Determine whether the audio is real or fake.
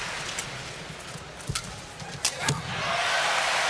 real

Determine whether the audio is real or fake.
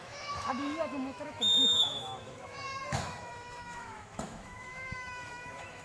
fake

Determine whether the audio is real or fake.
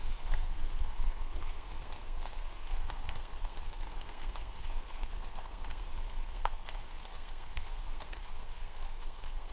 fake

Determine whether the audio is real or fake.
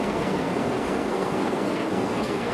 fake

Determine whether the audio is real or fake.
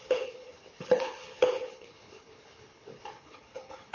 fake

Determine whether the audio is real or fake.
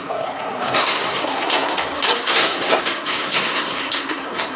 fake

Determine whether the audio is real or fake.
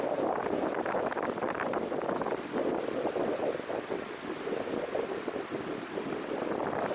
real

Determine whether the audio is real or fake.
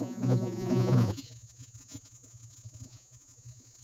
fake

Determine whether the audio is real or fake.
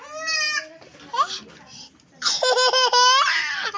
real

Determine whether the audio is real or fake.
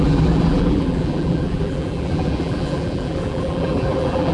fake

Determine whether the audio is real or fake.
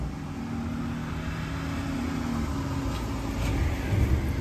real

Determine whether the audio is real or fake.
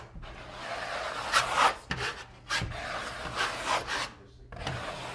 real